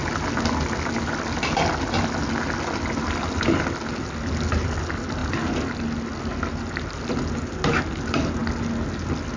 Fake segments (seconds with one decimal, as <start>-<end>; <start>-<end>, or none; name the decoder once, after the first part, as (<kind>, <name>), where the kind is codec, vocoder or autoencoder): none